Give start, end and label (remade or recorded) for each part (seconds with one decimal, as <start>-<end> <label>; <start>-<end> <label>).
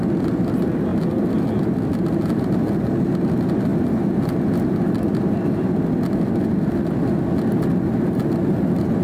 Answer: 0.0-9.0 recorded